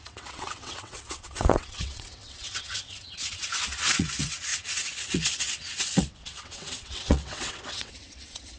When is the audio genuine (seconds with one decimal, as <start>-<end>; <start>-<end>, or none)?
none